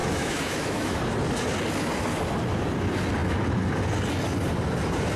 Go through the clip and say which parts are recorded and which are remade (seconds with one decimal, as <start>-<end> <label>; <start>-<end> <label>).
0.0-1.0 remade; 1.0-5.2 recorded

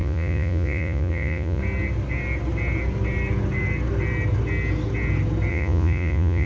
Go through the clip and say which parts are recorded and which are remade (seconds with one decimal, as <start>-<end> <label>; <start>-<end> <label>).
0.0-1.6 remade; 1.6-5.5 recorded; 5.5-6.5 remade

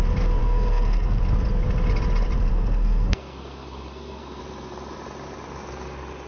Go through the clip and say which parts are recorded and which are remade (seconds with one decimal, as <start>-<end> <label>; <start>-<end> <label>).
0.0-0.4 recorded; 0.4-1.2 remade; 1.2-2.5 recorded; 2.5-4.4 remade; 4.4-6.3 recorded

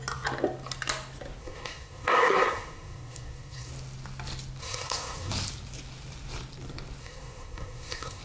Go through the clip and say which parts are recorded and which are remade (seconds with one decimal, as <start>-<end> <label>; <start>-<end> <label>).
0.0-1.4 recorded; 1.4-3.7 remade; 3.7-4.6 recorded; 4.6-5.3 remade; 5.3-7.0 recorded; 7.0-8.2 remade

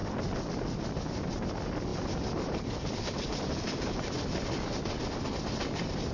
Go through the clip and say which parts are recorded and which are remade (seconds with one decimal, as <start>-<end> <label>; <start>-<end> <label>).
0.0-1.9 recorded; 1.9-4.7 remade; 4.7-6.1 recorded

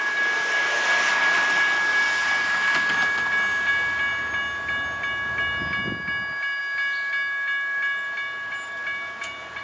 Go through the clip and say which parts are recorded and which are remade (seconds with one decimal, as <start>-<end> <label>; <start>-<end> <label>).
0.0-9.6 recorded